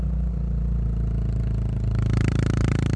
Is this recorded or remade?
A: recorded